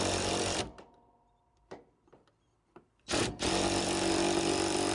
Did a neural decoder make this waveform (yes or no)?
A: yes